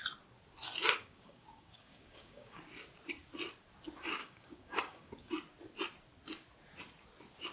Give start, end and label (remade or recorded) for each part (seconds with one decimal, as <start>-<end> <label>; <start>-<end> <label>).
0.0-1.0 recorded; 1.0-2.6 remade; 2.6-4.2 recorded; 4.2-5.3 remade; 5.3-7.5 recorded